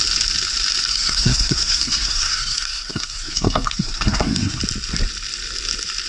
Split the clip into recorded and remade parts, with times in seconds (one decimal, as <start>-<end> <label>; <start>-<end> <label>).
0.0-0.9 recorded; 0.9-4.6 remade; 4.6-6.1 recorded